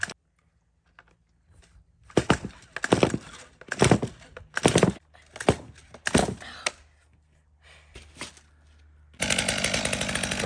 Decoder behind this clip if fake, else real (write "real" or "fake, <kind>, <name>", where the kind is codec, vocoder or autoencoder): real